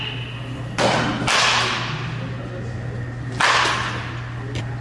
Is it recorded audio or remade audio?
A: recorded